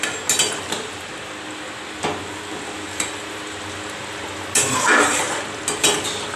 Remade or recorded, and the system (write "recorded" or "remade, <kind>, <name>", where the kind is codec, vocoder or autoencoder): recorded